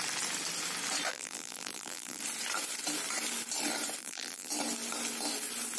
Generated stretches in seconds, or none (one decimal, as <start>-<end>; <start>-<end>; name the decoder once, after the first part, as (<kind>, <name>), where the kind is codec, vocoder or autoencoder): 1.1-2.2 (vocoder, BigVGAN v2); 4.0-4.5